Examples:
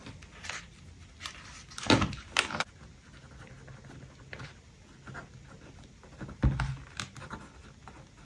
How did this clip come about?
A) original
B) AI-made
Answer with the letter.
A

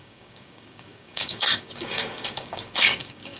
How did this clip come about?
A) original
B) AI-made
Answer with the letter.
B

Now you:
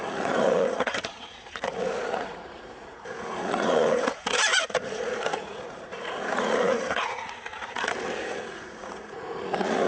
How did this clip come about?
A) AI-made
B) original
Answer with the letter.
A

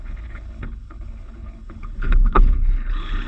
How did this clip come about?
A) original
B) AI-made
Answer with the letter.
B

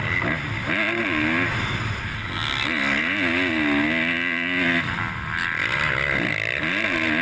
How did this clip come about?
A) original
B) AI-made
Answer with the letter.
A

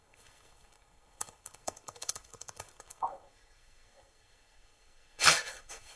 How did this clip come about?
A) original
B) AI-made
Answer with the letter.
B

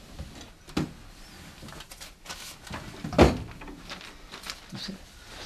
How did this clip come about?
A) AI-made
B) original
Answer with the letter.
B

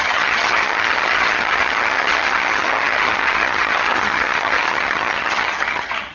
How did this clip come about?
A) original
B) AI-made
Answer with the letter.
B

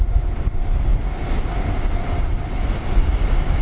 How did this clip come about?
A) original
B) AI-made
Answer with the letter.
A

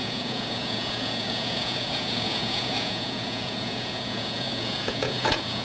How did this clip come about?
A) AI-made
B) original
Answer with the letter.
A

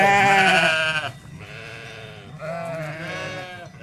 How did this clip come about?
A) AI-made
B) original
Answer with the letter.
B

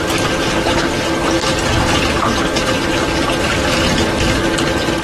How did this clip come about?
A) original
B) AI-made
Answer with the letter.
A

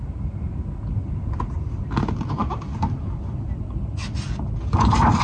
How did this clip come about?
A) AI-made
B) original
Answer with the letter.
B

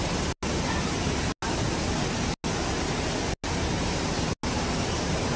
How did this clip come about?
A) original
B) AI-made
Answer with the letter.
A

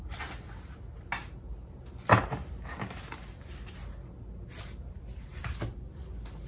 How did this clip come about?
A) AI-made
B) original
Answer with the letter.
B